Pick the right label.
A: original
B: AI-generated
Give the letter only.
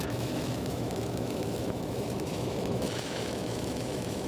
B